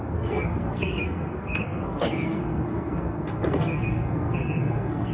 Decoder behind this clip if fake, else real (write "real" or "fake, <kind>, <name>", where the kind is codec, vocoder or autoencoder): fake, codec, SNAC